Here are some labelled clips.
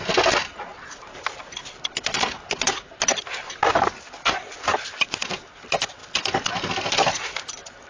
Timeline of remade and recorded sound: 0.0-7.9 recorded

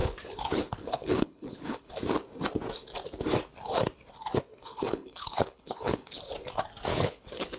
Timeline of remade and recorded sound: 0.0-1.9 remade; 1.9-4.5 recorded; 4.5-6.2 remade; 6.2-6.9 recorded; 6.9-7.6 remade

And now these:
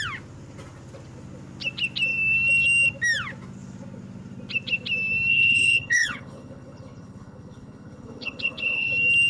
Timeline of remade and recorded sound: 0.0-5.3 recorded; 5.3-8.9 remade; 8.9-9.3 recorded

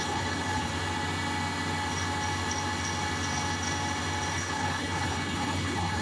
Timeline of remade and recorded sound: 0.0-0.7 remade; 0.7-4.3 recorded; 4.3-6.0 remade